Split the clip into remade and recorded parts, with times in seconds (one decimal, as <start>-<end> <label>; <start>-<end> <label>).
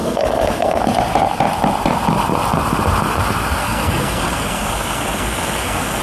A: 0.0-0.8 remade; 0.8-3.6 recorded; 3.6-6.0 remade